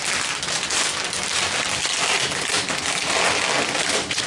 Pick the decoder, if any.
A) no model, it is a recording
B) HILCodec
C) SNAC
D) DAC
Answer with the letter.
A